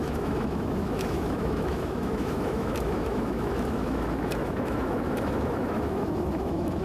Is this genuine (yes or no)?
no